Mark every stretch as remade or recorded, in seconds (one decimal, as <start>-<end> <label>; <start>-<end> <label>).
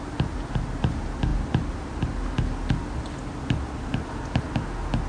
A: 0.0-5.1 recorded